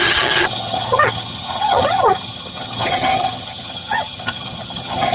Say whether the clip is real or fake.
fake